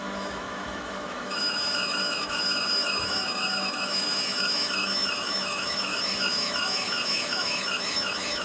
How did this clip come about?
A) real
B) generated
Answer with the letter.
B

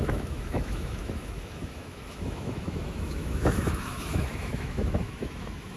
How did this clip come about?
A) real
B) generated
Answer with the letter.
B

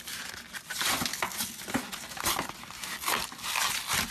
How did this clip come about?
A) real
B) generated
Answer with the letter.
A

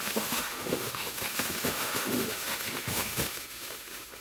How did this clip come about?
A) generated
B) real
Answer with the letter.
A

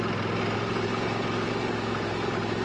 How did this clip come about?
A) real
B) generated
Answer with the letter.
A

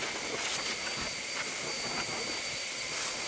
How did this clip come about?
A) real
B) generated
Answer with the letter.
A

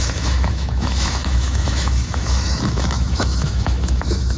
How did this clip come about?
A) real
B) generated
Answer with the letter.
B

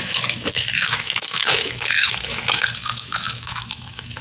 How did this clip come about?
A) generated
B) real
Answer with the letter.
A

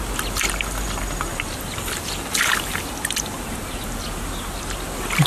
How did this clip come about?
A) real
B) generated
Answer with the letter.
A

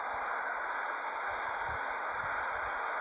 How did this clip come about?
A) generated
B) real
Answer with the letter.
B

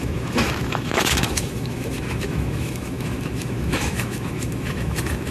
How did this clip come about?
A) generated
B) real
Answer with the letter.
A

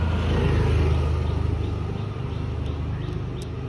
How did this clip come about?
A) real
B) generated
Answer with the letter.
A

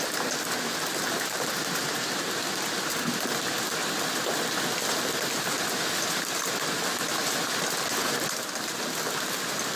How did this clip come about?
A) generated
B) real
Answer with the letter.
B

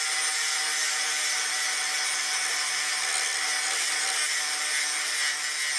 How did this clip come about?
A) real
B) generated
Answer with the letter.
A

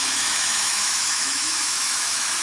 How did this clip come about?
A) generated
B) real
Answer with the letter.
A